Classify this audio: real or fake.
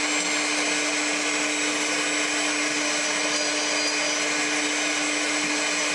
real